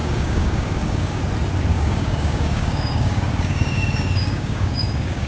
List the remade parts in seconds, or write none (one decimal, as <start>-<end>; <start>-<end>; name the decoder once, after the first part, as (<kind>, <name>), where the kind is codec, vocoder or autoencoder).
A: 0.0-1.2 (codec, DAC); 1.7-5.3